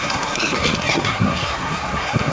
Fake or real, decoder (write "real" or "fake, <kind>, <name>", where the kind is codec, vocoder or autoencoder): fake, codec, SNAC